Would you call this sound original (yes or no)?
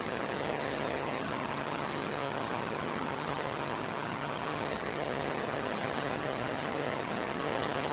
no